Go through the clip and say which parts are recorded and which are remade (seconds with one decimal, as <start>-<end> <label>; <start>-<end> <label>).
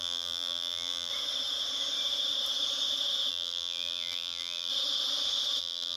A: 0.0-1.1 remade; 1.1-3.3 recorded; 3.3-4.7 remade; 4.7-5.6 recorded; 5.6-6.0 remade